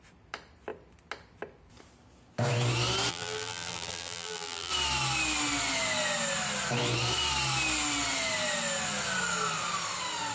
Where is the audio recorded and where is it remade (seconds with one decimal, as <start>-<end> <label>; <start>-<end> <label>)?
0.0-3.1 recorded; 3.1-4.7 remade; 4.7-10.3 recorded